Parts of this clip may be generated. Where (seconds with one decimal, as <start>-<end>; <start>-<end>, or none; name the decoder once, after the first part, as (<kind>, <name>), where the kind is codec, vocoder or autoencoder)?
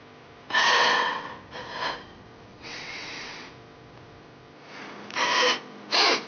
0.8-1.3 (vocoder, WaveNeXt); 2.5-3.5